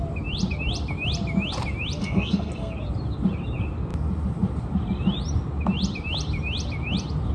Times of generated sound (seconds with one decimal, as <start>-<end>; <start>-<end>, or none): 2.0-2.7